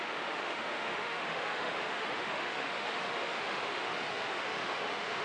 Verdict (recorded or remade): remade